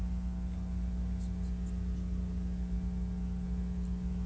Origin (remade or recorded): recorded